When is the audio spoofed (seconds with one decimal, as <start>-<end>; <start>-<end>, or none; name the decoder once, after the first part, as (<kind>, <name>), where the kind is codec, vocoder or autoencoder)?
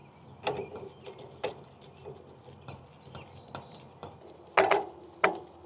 none